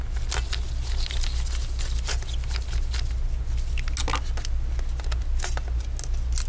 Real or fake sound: real